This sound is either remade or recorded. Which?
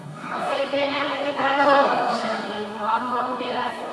remade